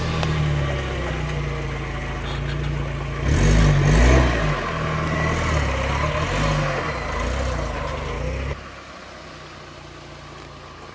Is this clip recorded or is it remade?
recorded